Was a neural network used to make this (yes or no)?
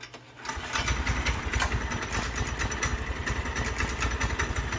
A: no